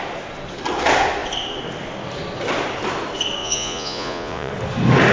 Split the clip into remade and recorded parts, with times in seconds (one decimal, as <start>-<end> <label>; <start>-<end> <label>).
0.0-3.4 recorded; 3.4-4.5 remade; 4.5-5.1 recorded